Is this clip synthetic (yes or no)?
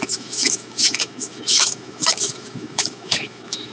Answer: yes